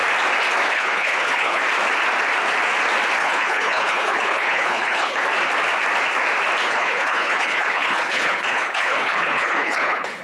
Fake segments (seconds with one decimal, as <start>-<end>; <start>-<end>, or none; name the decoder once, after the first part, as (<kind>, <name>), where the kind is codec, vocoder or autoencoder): 0.7-1.6 (codec, HILCodec); 3.2-5.2; 6.7-10.2